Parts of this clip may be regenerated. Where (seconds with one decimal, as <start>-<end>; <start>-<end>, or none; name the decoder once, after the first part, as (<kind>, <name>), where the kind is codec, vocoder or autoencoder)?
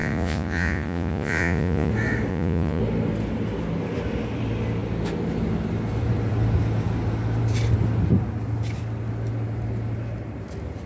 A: 0.0-1.9 (vocoder, Vocos); 2.3-2.8